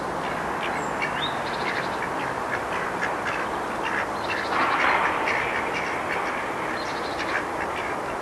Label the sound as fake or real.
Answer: real